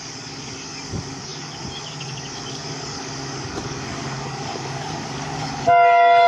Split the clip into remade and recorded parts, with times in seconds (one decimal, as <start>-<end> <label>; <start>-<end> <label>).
0.0-6.3 remade